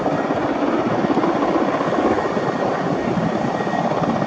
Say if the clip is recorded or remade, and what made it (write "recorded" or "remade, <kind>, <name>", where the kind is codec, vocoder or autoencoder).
recorded